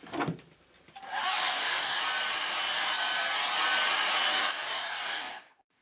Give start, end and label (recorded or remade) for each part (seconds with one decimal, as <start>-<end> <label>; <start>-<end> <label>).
0.0-1.2 recorded; 1.2-2.0 remade; 2.0-4.3 recorded; 4.3-5.8 remade